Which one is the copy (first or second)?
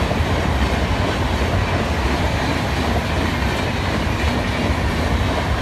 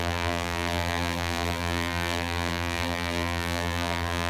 second